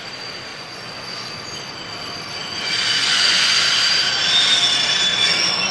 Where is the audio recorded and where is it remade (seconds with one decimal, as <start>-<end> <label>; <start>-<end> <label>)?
0.0-0.5 recorded; 0.5-1.3 remade; 1.3-2.4 recorded; 2.4-3.7 remade; 3.7-5.1 recorded; 5.1-5.7 remade